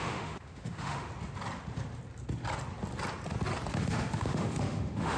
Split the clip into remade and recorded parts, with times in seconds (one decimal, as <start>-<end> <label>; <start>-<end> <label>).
0.0-1.1 remade; 1.1-3.7 recorded; 3.7-5.2 remade